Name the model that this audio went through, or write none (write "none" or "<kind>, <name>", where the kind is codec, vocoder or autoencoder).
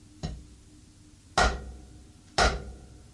none